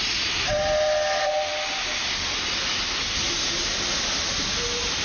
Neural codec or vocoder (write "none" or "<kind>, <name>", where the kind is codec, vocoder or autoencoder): none